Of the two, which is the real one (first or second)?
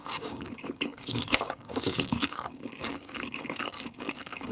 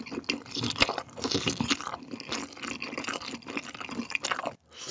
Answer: second